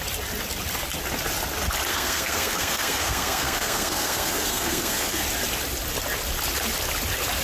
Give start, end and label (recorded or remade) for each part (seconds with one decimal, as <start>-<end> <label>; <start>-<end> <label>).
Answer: 0.0-1.9 recorded; 1.9-5.2 remade; 5.2-7.4 recorded